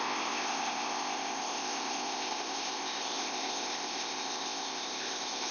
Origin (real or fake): fake